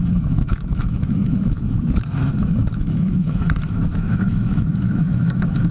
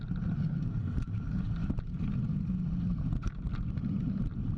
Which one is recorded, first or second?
second